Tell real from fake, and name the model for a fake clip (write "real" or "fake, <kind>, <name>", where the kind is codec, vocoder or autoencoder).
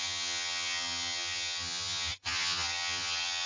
fake, vocoder, HiFi-GAN